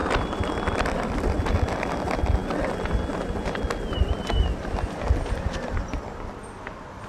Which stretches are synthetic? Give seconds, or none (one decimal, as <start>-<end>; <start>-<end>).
none